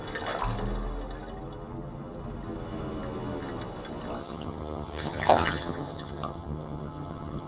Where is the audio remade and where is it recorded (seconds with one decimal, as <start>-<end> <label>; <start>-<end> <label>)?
0.0-4.2 recorded; 4.2-7.5 remade

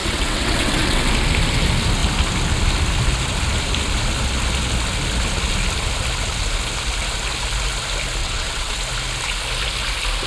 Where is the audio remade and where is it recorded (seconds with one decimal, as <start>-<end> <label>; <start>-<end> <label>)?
0.0-1.1 remade; 1.1-8.2 recorded; 8.2-8.7 remade; 8.7-10.3 recorded

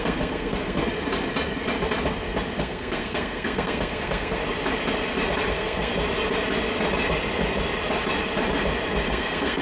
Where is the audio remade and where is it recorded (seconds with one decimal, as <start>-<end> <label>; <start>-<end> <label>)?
0.0-0.8 remade; 0.8-2.6 recorded; 2.6-4.4 remade; 4.4-5.5 recorded; 5.5-5.9 remade; 5.9-9.0 recorded; 9.0-9.6 remade